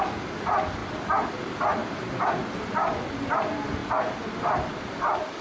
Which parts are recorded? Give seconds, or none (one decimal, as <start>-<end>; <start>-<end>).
0.0-5.4